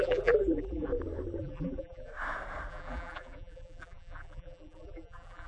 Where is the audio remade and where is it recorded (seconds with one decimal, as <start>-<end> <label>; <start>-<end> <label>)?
0.0-0.9 remade; 0.9-1.4 recorded; 1.4-2.1 remade; 2.1-2.7 recorded; 2.7-5.5 remade